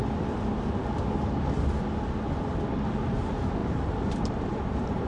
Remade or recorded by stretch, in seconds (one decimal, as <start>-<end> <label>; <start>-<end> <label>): 0.0-3.1 recorded; 3.1-5.1 remade